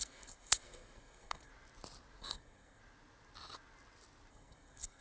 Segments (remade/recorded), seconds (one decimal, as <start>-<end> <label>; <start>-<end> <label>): 0.0-1.5 remade; 1.5-2.2 recorded; 2.2-2.8 remade; 2.8-4.3 recorded; 4.3-5.0 remade